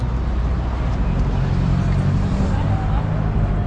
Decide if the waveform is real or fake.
real